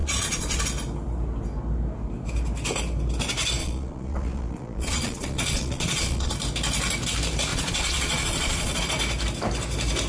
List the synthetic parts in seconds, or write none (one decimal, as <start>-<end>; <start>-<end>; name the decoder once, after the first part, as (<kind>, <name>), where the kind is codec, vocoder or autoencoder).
0.0-0.6 (vocoder, Vocos); 3.6-6.3; 7.5-8.8